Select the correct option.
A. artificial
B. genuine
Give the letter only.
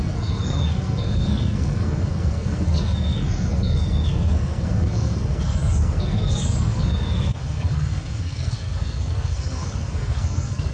A